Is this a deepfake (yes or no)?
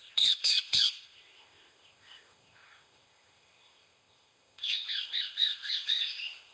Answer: yes